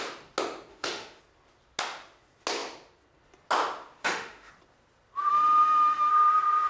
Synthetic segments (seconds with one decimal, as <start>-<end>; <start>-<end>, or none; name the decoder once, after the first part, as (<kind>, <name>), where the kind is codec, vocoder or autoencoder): 0.7-1.2 (autoencoder, DAC-VAE); 4.0-4.5; 5.3-6.1